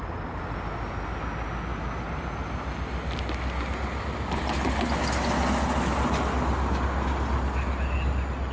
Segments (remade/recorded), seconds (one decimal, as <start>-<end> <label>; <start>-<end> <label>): 0.0-8.5 recorded